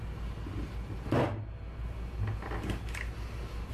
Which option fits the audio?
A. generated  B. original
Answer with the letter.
B